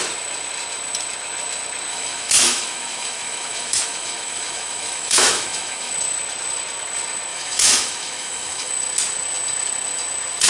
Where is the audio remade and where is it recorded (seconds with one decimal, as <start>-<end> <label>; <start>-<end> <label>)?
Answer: 0.0-1.9 recorded; 1.9-5.9 remade; 5.9-7.3 recorded; 7.3-8.7 remade; 8.7-10.5 recorded